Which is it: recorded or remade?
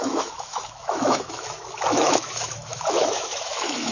remade